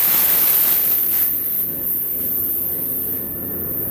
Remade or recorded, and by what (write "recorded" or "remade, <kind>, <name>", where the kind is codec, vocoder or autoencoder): recorded